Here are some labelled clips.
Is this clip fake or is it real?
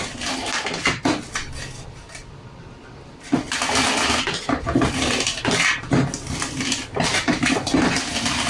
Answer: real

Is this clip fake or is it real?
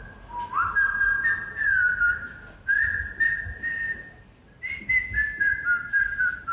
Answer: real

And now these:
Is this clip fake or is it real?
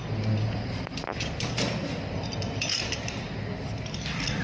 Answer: real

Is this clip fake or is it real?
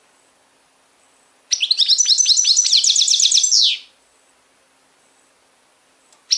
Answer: real